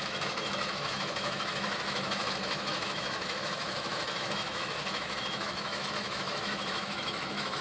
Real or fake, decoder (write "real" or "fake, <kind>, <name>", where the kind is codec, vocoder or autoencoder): fake, autoencoder, DAC-VAE